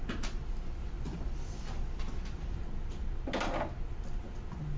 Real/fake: real